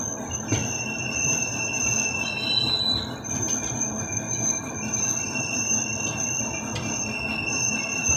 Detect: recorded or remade recorded